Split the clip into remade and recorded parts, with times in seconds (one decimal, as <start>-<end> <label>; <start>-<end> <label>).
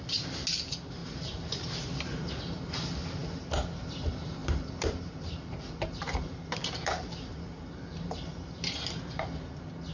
0.0-1.0 recorded; 1.0-2.3 remade; 2.3-4.4 recorded; 4.4-8.8 remade; 8.8-9.9 recorded